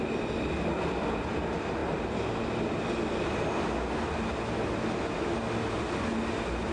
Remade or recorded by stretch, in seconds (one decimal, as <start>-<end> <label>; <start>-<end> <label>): 0.0-6.7 recorded